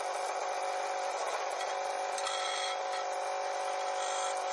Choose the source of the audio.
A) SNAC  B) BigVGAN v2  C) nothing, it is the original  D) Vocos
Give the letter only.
C